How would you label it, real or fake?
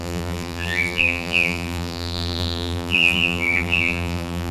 fake